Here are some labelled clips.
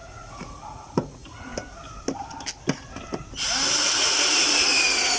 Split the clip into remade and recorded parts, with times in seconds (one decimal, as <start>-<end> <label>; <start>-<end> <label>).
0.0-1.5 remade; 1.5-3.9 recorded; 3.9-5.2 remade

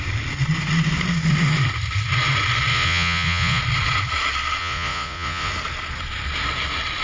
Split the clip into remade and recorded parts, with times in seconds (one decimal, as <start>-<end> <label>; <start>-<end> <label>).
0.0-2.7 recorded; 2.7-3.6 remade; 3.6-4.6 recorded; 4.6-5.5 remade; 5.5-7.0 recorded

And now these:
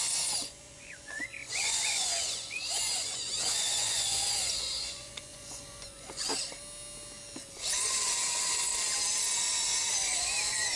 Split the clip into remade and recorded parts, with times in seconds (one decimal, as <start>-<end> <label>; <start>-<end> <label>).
0.0-6.3 remade; 6.3-7.7 recorded; 7.7-8.7 remade; 8.7-9.9 recorded; 9.9-10.8 remade